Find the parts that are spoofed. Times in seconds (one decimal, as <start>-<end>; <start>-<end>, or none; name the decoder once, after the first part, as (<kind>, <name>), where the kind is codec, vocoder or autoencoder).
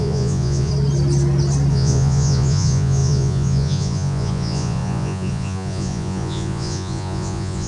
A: 0.0-0.7 (vocoder, Vocos); 1.7-7.7